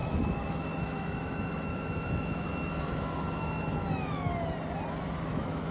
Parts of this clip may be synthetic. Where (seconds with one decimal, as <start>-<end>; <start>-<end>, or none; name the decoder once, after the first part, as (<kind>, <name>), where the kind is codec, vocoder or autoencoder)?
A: 0.0-4.3 (autoencoder, DAC-VAE); 5.2-5.7